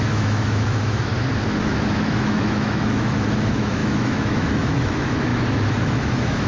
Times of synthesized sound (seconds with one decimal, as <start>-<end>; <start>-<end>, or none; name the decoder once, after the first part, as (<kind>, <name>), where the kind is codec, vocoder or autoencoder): 0.0-1.1 (autoencoder, DAC-VAE); 1.6-5.3; 5.8-6.5